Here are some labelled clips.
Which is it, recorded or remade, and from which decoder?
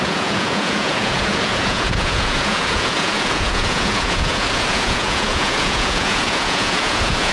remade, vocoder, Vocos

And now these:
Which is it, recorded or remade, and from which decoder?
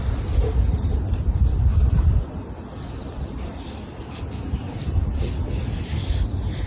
recorded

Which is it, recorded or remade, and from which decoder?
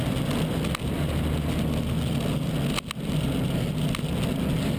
recorded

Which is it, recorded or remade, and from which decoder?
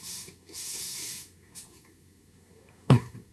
remade, codec, SNAC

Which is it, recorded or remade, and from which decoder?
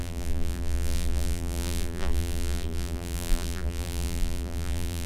remade, vocoder, BigVGAN v2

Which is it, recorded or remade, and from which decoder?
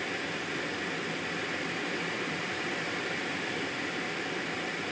remade, vocoder, BigVGAN v2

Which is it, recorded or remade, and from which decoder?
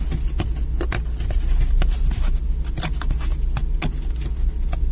recorded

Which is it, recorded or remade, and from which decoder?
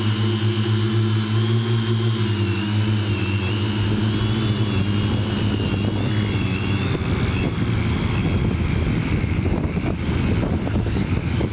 recorded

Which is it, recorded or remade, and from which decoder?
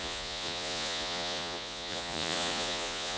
remade, vocoder, Vocos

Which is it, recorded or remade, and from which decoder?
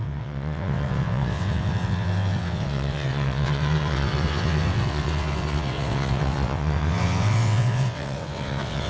remade, vocoder, WaveNeXt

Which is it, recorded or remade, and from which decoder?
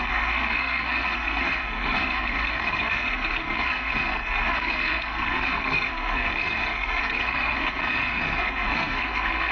remade, codec, SNAC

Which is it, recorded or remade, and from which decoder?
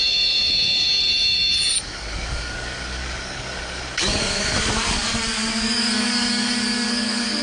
remade, codec, DAC